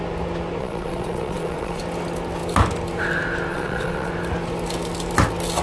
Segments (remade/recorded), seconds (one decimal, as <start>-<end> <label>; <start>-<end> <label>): 0.0-0.6 recorded; 0.6-1.8 remade; 1.8-3.5 recorded; 3.5-4.1 remade; 4.1-5.6 recorded